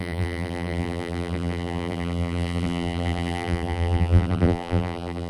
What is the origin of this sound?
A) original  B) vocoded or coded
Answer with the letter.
B